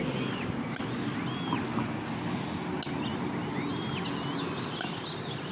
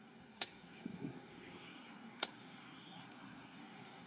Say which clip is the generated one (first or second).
second